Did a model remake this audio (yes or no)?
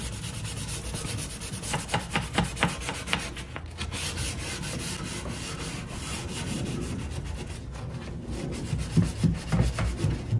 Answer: no